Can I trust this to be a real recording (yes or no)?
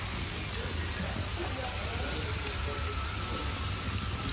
yes